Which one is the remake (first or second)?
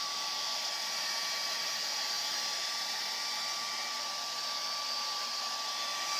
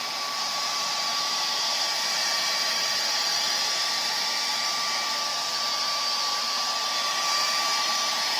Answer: second